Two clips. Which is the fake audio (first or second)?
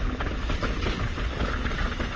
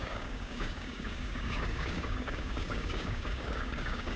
second